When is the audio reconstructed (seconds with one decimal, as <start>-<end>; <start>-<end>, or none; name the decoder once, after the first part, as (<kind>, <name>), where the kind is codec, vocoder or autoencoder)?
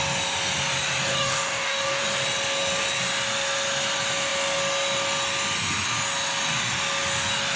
1.0-2.0 (codec, DAC)